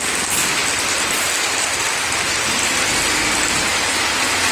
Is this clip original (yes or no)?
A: yes